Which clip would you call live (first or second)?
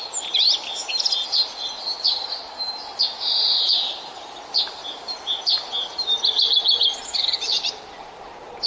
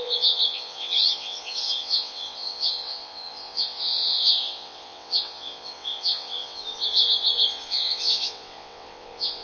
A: first